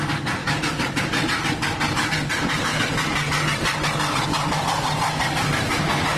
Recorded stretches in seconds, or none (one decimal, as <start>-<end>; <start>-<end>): 0.0-2.3; 2.8-6.2

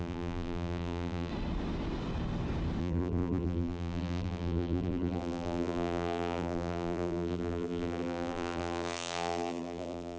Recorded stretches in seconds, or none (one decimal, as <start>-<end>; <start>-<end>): 1.3-2.8